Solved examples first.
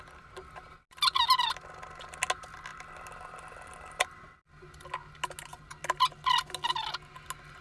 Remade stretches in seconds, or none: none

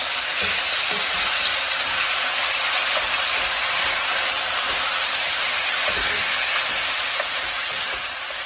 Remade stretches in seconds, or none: none

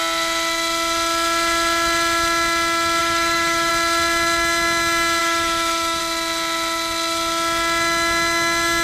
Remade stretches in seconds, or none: 3.0-3.7 (autoencoder, DAC-VAE); 5.2-6.0

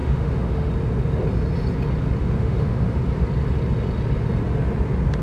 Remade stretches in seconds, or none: 0.0-0.7 (autoencoder, DAC-VAE); 2.2-3.0

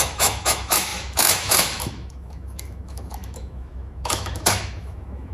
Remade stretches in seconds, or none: 0.0-5.3 (autoencoder, DAC-VAE)

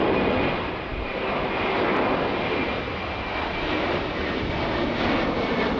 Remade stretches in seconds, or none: none

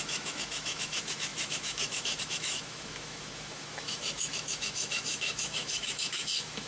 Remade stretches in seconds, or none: 0.0-6.7 (autoencoder, DAC-VAE)